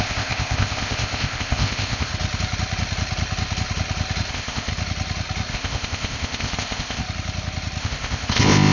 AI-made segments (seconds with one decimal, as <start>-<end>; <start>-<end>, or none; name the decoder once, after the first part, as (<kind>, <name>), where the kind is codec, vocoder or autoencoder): 0.0-2.1 (codec, ZipCodec); 4.3-4.7; 5.5-7.0; 7.8-8.7